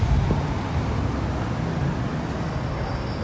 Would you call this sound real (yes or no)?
yes